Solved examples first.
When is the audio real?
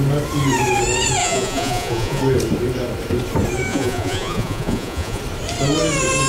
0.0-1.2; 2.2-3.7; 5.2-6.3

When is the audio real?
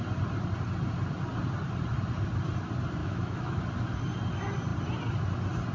0.0-3.0; 3.6-5.7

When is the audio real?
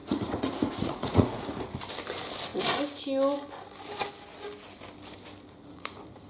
1.6-5.6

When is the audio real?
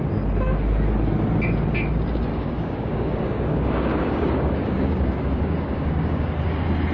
0.0-2.3; 6.4-6.9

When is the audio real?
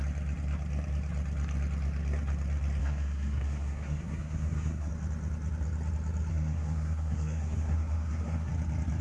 0.0-2.8; 4.9-6.3; 8.5-9.0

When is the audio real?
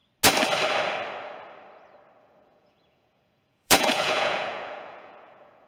0.0-2.2